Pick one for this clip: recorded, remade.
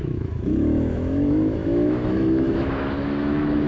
remade